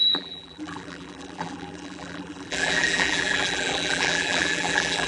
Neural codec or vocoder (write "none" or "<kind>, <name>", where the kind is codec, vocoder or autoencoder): vocoder, BigVGAN v2